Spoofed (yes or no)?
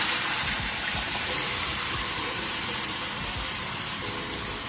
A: yes